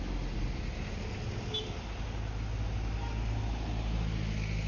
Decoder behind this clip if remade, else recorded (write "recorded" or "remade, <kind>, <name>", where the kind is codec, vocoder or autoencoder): recorded